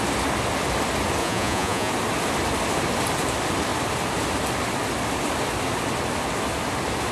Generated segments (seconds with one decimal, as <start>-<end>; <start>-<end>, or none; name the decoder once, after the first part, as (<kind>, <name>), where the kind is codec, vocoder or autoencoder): 1.2-1.9 (vocoder, Vocos)